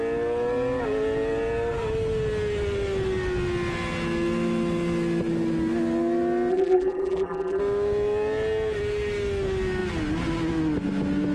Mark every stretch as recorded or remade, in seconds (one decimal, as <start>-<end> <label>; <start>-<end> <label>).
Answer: 0.0-6.5 recorded; 6.5-7.6 remade; 7.6-11.3 recorded